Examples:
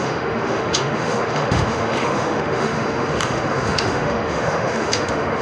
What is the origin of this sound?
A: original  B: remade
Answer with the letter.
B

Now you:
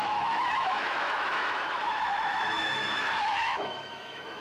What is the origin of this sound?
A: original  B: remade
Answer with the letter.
B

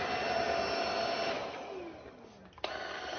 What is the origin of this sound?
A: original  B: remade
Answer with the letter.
A